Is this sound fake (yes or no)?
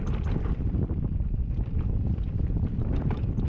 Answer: no